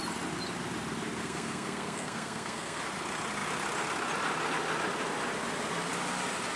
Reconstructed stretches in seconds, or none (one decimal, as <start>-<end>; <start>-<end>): 1.2-2.8

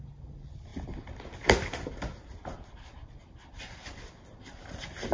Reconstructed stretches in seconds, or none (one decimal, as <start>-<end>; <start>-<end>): none

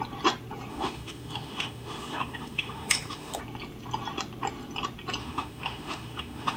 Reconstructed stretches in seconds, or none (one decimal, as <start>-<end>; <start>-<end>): 0.7-3.4; 5.2-6.6

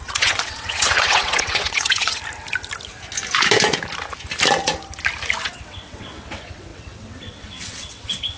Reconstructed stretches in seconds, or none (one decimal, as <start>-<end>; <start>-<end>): 0.0-2.2; 5.4-8.4

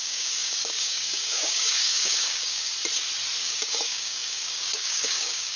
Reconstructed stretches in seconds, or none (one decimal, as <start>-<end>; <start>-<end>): 0.0-2.7; 3.4-5.6

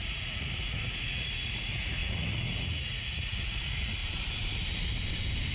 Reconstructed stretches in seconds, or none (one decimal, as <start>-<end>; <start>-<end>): 0.0-4.0